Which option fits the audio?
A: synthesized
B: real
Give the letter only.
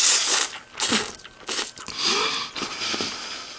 B